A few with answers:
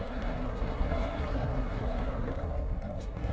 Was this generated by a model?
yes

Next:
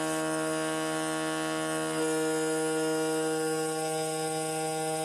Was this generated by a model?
no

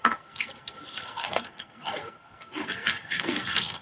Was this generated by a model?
yes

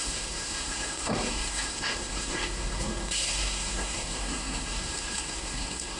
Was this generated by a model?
yes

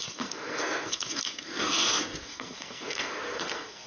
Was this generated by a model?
yes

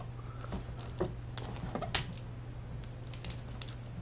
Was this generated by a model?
no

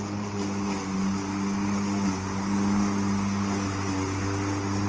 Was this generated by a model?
no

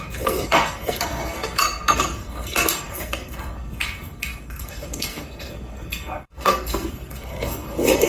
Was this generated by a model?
yes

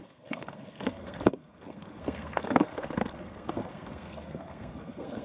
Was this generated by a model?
yes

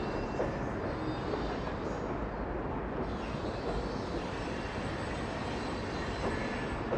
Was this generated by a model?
no